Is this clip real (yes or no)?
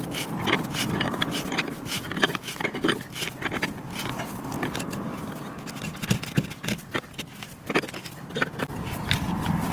yes